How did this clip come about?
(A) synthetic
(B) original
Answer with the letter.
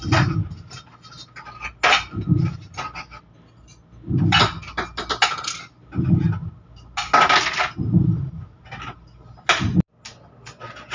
B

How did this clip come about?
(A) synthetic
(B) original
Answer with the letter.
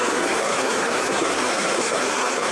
A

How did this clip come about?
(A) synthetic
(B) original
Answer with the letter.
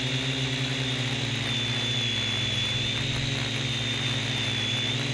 B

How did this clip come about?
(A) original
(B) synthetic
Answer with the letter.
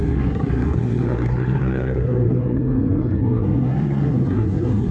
B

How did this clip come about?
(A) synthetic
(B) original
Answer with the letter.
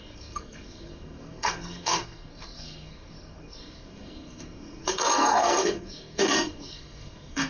A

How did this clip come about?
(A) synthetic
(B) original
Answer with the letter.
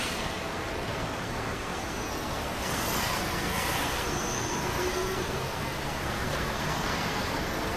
A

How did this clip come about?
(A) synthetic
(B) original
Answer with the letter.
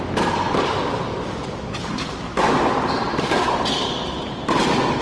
B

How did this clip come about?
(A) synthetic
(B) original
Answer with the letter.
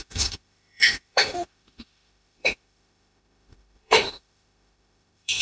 A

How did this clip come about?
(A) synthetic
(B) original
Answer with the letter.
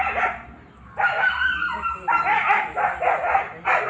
B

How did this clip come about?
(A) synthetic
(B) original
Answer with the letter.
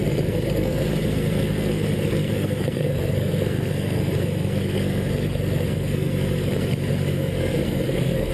A